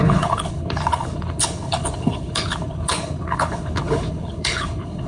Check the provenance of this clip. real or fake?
fake